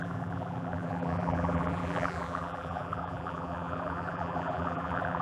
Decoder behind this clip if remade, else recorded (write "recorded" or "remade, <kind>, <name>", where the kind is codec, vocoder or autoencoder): remade, vocoder, BigVGAN v2